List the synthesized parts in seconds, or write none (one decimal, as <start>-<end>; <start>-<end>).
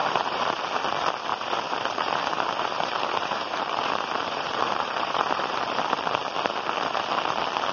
0.0-0.6; 1.3-5.6